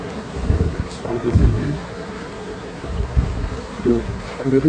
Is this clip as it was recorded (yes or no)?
no